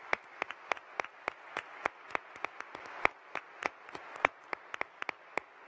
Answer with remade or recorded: recorded